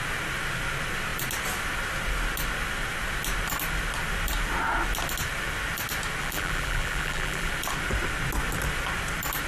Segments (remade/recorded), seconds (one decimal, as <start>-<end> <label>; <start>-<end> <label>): 0.0-6.2 recorded; 6.2-7.5 remade; 7.5-9.5 recorded